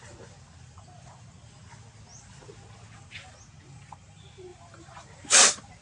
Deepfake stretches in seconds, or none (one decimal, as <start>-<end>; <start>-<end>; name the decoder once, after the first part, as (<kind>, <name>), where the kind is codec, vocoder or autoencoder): 4.5-5.8 (vocoder, BigVGAN v2)